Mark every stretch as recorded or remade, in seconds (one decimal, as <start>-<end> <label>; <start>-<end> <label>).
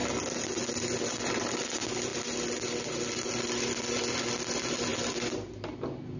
0.0-6.2 recorded